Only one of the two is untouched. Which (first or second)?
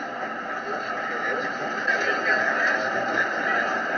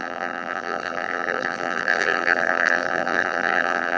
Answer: first